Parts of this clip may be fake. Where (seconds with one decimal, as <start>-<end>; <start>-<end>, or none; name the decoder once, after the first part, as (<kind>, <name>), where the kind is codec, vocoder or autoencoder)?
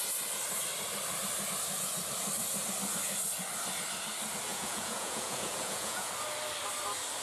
4.5-6.1 (vocoder, Vocos)